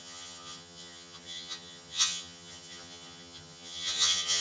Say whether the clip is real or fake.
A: fake